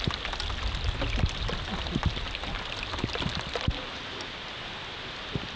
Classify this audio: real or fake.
real